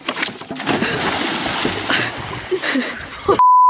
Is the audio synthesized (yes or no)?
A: no